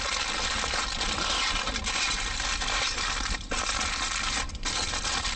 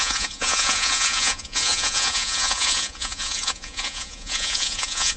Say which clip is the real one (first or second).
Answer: first